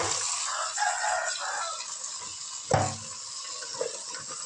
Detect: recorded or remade recorded